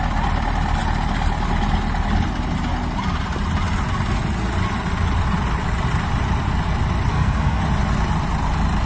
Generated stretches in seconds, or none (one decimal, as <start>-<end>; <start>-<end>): 7.1-7.6